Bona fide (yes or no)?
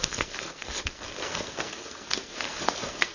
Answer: no